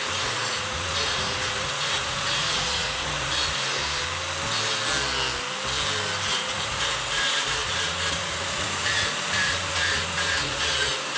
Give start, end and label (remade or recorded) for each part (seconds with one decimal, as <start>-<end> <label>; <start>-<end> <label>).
0.0-3.8 remade; 3.8-6.3 recorded; 6.3-11.2 remade